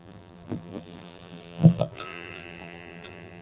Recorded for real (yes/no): no